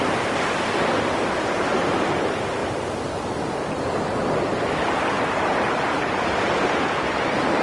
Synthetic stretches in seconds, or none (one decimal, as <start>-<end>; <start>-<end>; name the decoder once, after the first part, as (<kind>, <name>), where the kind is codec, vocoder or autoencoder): 0.0-7.6 (vocoder, BigVGAN v2)